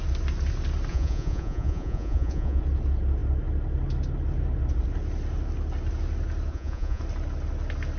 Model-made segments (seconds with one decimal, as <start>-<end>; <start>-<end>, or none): 0.9-2.6; 6.5-7.0